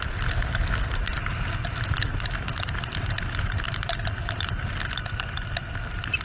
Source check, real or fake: real